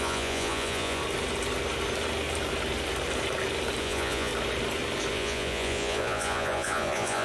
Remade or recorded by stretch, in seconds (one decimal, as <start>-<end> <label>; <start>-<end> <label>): 0.0-1.0 remade; 1.0-3.8 recorded; 3.8-4.3 remade; 4.3-5.1 recorded; 5.1-7.2 remade